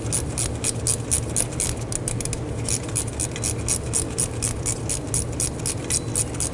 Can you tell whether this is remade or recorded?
recorded